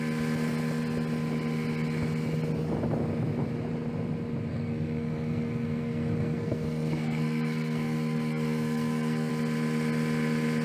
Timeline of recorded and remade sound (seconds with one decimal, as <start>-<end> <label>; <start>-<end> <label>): 0.0-4.5 recorded; 4.5-9.3 remade; 9.3-10.6 recorded